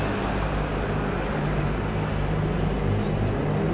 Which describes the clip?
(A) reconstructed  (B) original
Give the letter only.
B